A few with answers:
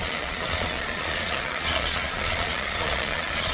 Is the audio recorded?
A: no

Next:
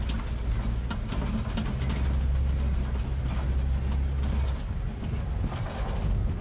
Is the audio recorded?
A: yes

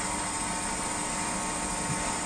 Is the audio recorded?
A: yes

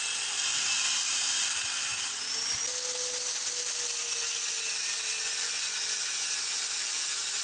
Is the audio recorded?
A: yes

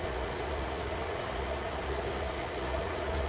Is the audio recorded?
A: no